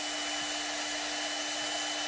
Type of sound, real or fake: real